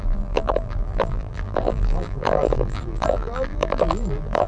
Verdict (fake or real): fake